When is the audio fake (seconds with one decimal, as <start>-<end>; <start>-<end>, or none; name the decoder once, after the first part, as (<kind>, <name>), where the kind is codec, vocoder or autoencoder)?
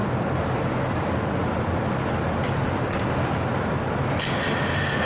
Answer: none